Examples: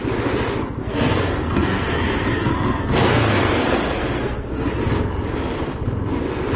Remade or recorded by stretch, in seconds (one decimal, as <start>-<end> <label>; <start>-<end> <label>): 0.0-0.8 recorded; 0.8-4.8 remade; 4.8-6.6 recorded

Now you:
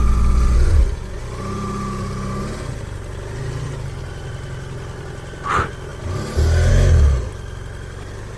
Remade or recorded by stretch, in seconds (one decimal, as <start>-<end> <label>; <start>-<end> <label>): 0.0-1.3 remade; 1.3-8.4 recorded

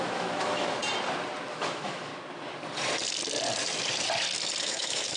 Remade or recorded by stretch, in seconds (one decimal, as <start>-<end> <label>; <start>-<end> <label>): 0.0-0.8 remade; 0.8-1.5 recorded; 1.5-2.1 remade; 2.1-4.6 recorded; 4.6-5.2 remade